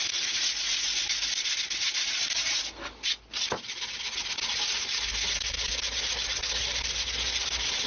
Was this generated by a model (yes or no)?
no